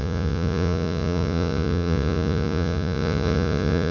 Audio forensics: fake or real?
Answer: fake